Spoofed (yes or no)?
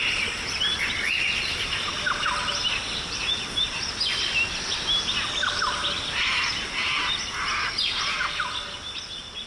no